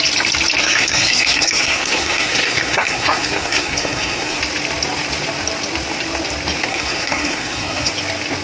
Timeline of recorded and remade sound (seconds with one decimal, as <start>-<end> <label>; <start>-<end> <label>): 0.0-0.6 recorded; 0.6-4.4 remade; 4.4-6.7 recorded; 6.7-7.9 remade; 7.9-8.4 recorded